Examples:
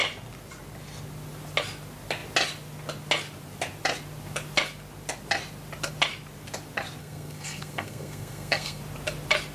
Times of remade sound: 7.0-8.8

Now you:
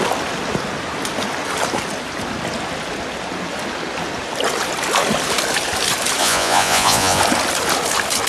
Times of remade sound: 6.2-7.2

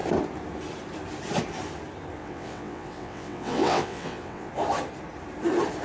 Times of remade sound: 2.2-4.5

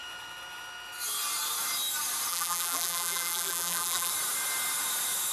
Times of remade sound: 2.3-4.1

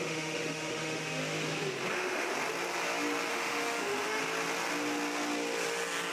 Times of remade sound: 0.0-1.2; 1.9-2.3; 3.3-4.2

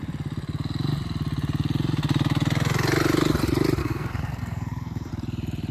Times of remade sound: 3.8-5.1

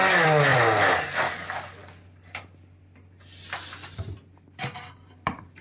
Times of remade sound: 0.5-1.3; 1.8-5.6

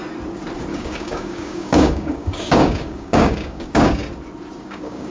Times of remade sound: 0.7-4.0; 4.6-5.1